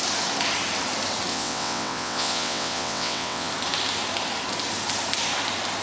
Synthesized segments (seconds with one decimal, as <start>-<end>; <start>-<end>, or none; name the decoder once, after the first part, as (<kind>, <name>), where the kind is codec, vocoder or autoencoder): 1.3-3.5 (vocoder, WaveNeXt)

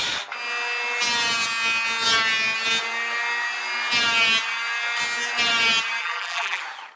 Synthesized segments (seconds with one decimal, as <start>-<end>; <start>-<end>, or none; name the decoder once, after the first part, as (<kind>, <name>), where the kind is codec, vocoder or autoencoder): 6.0-6.6 (vocoder, BigVGAN v2)

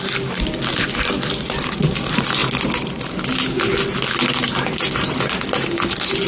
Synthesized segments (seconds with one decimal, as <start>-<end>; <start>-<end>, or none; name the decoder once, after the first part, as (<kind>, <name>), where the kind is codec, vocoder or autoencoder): none

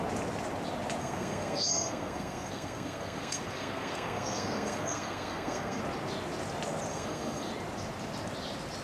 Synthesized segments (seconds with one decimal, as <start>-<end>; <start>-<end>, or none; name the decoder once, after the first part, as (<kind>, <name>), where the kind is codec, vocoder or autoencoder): 1.0-5.8 (codec, SNAC); 6.9-7.5

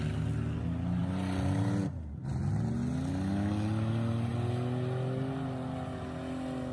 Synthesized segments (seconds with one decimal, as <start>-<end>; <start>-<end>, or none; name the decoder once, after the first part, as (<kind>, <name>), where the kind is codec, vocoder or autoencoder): none

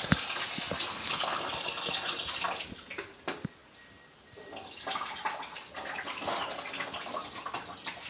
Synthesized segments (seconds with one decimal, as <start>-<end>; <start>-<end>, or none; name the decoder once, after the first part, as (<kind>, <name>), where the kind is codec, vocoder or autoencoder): 0.9-1.4 (codec, HILCodec)

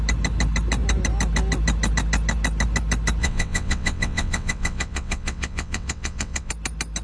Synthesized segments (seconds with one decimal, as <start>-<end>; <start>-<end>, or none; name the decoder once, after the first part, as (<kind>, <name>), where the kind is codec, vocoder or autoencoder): 3.2-6.5 (vocoder, WaveNeXt)

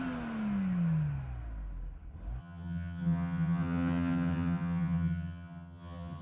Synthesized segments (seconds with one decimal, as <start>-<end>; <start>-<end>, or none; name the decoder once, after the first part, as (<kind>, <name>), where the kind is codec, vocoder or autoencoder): 2.4-6.2 (vocoder, HiFi-GAN)